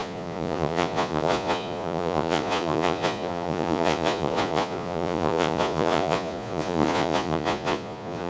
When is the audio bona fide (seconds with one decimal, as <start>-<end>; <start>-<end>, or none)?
none

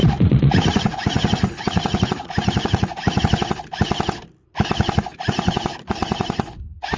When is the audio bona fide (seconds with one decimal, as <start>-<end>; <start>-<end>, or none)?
3.2-5.1

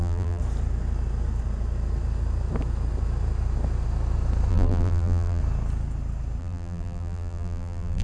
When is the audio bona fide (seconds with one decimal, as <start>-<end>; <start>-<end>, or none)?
0.4-4.5; 5.4-6.4